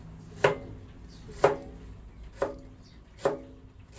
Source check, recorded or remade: recorded